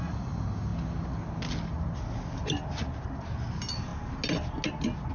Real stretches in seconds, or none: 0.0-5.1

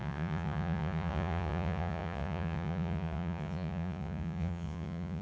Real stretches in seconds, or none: none

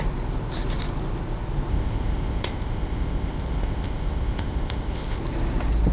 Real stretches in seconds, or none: 0.0-1.7; 5.2-5.9

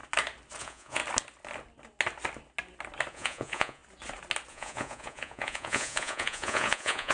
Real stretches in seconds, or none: 0.0-0.6; 1.0-3.1; 3.8-4.5

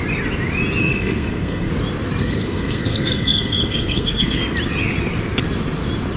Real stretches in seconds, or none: 0.0-0.8; 1.7-2.2; 4.4-6.2

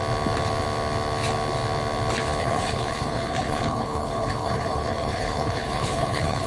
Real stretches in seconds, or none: 0.0-2.4

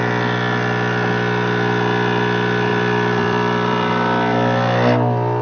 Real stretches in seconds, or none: 0.0-2.7; 3.9-5.4

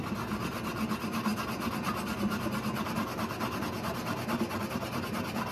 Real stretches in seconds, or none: 0.0-5.5